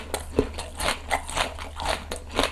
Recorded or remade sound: recorded